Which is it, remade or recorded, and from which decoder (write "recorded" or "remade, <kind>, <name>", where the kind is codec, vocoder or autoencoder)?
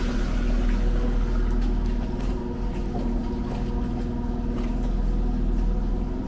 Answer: recorded